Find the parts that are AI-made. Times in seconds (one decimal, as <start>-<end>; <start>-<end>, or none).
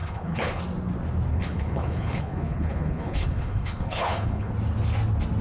0.0-0.6; 1.3-4.5